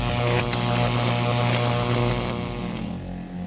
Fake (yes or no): no